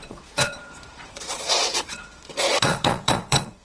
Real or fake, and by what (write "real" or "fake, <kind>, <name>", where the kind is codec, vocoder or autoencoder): fake, vocoder, Vocos